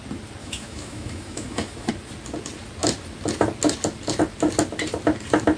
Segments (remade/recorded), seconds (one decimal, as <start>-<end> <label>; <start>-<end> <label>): 0.0-0.4 recorded; 0.4-1.9 remade; 1.9-5.6 recorded